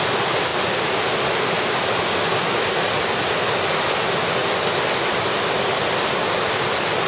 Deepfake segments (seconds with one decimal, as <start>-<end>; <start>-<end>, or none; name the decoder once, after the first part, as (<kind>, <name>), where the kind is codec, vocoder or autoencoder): none